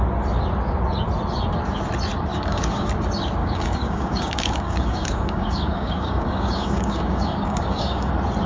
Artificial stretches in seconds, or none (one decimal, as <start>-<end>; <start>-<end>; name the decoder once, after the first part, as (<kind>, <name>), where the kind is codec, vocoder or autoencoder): 2.3-2.9 (codec, DAC); 3.4-8.1